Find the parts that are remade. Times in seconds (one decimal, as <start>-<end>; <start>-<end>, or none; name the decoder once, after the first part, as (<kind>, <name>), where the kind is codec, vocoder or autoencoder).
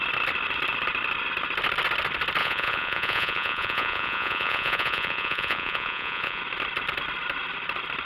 2.4-6.4 (vocoder, Vocos)